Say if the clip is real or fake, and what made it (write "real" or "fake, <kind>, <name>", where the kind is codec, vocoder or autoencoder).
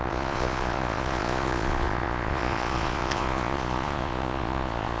fake, vocoder, Vocos